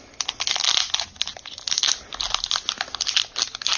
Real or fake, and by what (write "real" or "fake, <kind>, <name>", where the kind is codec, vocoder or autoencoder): real